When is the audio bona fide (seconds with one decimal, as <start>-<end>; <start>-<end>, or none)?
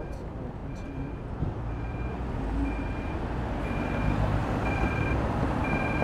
0.0-0.6; 2.1-4.4; 5.6-6.0